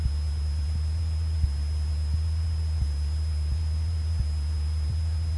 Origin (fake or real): real